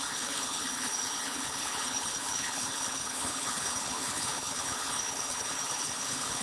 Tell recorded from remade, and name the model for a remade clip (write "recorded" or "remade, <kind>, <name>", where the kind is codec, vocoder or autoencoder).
remade, codec, HILCodec